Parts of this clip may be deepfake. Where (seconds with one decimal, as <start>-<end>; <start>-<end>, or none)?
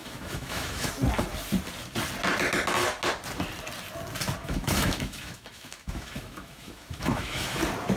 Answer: 0.0-0.9; 4.4-7.6